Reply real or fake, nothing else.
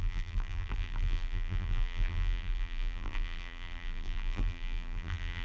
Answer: fake